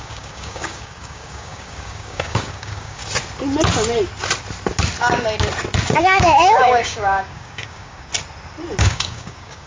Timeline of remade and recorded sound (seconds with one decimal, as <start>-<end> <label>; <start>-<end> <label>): 0.0-3.0 remade; 3.0-6.0 recorded; 6.0-8.1 remade; 8.1-8.8 recorded; 8.8-9.7 remade